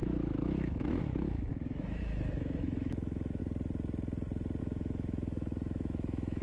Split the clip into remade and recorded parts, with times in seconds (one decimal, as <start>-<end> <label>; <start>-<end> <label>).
0.0-3.4 remade; 3.4-4.6 recorded; 4.6-6.4 remade